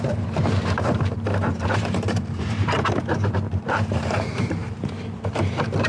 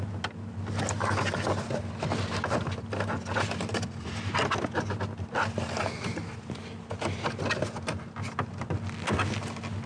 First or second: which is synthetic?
first